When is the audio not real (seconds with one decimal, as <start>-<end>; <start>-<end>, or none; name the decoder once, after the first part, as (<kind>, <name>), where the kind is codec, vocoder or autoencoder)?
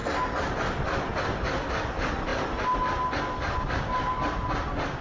none